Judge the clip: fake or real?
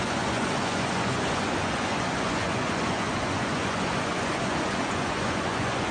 fake